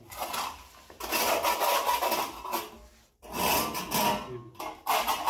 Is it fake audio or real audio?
real